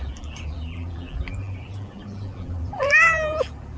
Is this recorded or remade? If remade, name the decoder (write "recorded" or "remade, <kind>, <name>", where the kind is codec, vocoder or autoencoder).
remade, vocoder, BigVGAN v2